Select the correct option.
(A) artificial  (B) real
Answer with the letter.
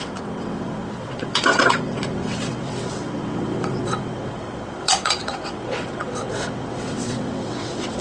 A